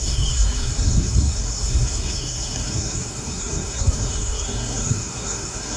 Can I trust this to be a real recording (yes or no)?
no